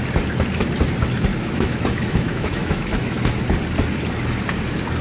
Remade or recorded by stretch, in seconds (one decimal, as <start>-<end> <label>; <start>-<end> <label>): 0.0-1.3 recorded; 1.3-3.4 remade; 3.4-5.0 recorded